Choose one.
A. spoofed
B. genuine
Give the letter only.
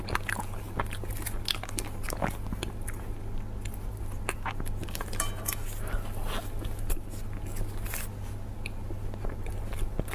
B